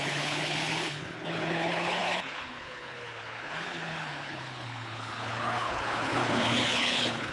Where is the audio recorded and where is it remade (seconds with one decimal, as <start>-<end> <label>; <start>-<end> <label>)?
0.0-7.3 remade